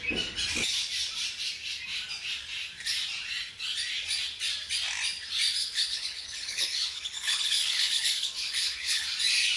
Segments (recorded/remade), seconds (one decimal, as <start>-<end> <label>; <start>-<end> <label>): 0.0-5.6 recorded; 5.6-9.0 remade; 9.0-9.6 recorded